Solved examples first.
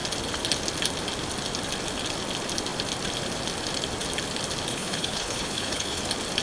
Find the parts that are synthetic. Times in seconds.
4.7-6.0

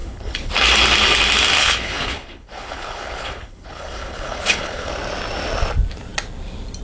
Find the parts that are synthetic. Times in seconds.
0.0-0.5; 1.6-4.9

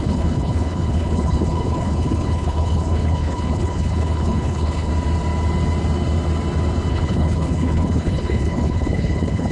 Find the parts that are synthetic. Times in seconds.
0.0-4.9; 6.9-9.5

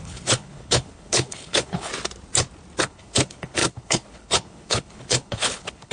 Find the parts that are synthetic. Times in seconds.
0.0-1.9; 2.8-5.9

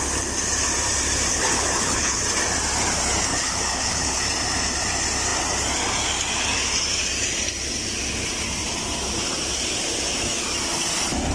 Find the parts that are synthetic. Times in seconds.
1.3-2.2; 3.3-4.2